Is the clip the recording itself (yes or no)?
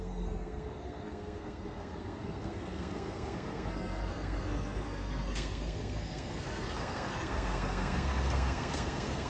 no